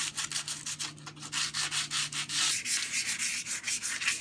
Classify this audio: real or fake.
real